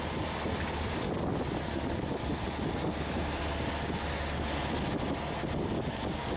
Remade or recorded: recorded